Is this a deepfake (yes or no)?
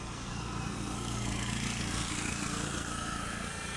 yes